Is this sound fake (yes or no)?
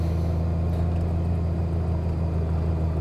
no